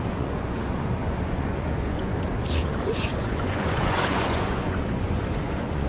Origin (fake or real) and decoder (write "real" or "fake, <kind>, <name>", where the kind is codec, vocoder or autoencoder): fake, vocoder, Vocos